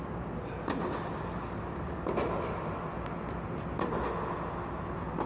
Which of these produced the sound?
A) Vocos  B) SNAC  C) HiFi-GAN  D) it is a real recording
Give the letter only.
D